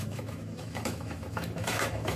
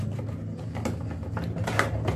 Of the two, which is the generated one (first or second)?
first